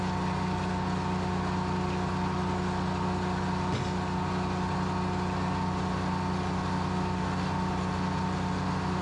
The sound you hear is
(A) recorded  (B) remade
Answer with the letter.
A